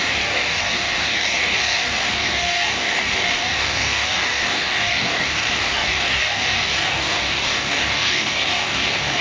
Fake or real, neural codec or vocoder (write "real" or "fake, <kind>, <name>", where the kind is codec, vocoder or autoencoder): fake, codec, DAC